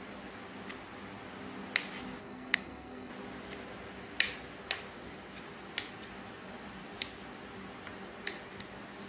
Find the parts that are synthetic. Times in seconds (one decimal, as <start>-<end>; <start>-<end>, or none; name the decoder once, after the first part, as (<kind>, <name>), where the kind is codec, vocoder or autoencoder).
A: 2.2-3.1 (codec, SNAC)

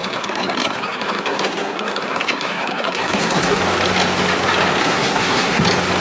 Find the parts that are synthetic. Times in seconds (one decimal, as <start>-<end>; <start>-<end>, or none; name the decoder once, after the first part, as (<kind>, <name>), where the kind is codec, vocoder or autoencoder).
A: 0.0-3.6 (codec, SNAC); 4.8-5.6

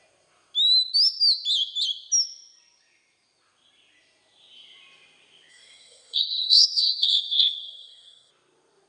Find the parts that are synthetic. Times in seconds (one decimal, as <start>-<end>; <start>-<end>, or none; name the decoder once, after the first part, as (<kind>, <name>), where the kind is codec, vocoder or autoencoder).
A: 5.5-8.3 (codec, SNAC)

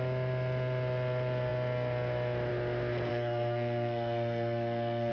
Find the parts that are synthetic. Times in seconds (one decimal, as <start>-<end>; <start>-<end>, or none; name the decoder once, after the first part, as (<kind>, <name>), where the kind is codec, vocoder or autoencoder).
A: 3.1-5.1 (codec, SNAC)

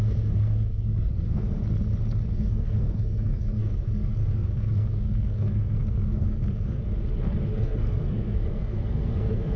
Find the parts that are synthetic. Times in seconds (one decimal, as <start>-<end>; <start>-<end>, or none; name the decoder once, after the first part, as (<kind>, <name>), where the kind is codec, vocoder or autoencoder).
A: 0.0-1.6 (codec, SNAC); 2.3-6.8; 7.5-9.6

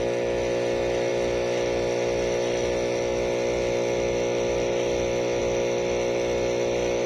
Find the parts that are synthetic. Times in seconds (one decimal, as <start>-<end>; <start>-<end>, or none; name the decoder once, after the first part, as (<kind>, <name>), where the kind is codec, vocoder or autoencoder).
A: none

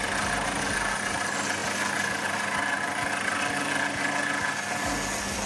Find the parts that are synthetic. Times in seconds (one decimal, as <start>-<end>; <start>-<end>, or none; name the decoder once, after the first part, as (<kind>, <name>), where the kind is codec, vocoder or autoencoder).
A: none